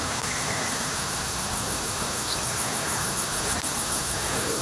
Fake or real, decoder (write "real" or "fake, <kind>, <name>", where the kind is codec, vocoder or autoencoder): fake, codec, SNAC